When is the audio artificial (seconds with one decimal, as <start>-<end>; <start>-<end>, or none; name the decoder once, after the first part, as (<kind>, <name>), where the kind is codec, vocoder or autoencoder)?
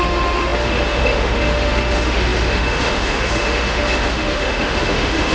0.0-5.3 (autoencoder, DAC-VAE)